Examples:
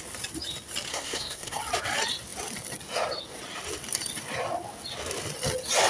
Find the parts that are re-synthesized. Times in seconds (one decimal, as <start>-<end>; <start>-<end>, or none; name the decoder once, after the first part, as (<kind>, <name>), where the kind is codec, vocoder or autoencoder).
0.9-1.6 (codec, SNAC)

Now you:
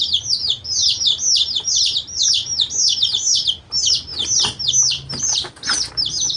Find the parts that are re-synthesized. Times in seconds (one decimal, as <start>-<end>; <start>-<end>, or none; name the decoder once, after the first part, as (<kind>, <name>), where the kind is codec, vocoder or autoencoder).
none

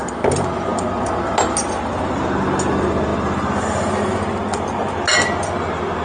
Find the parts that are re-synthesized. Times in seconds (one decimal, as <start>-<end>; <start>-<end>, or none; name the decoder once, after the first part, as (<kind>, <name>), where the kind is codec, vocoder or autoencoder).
none

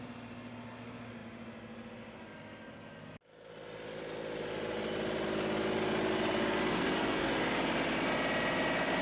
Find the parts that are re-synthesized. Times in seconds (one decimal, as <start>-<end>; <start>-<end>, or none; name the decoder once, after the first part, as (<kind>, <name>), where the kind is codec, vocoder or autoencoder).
6.7-7.3 (codec, SNAC)

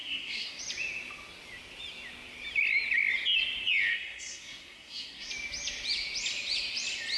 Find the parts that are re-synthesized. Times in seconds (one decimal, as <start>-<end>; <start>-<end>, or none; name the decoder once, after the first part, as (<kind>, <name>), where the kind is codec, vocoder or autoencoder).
0.0-0.6 (codec, SNAC); 3.9-5.3

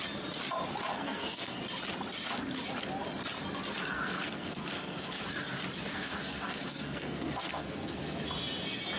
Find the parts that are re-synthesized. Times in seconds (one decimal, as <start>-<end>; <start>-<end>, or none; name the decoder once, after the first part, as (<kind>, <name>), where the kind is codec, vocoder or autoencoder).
0.9-1.6 (codec, SNAC); 3.8-5.2; 5.9-8.0